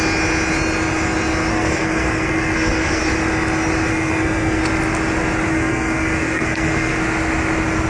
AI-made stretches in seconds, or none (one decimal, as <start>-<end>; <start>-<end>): 1.5-3.0; 3.9-4.6; 5.5-7.0